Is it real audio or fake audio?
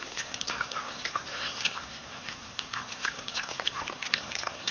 fake